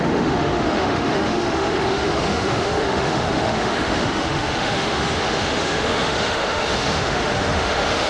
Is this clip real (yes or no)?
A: no